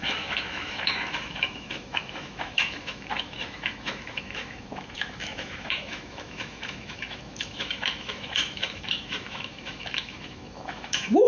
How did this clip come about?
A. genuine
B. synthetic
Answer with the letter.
B